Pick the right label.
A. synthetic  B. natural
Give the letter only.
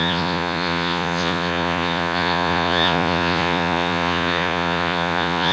A